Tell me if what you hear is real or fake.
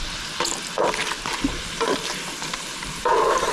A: real